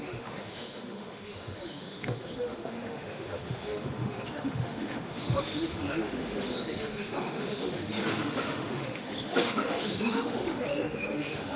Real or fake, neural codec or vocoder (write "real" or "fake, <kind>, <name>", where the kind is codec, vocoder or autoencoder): fake, autoencoder, DAC-VAE